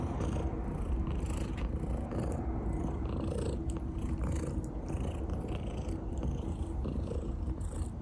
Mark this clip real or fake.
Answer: fake